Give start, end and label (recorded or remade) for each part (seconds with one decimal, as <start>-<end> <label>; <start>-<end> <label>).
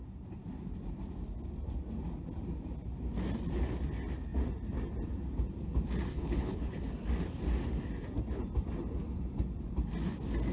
0.0-6.1 recorded; 6.1-6.9 remade; 6.9-10.5 recorded